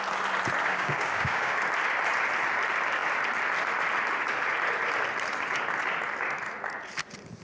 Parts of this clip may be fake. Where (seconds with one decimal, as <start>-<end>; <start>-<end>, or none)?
0.6-1.6